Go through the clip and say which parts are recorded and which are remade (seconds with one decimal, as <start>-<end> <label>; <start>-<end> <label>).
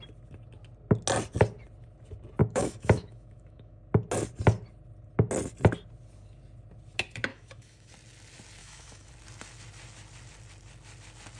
0.0-2.4 recorded; 2.4-3.8 remade; 3.8-7.3 recorded; 7.3-7.9 remade; 7.9-8.6 recorded; 8.6-9.1 remade; 9.1-11.4 recorded